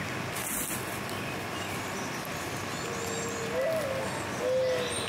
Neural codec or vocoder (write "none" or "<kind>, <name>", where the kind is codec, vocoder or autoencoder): none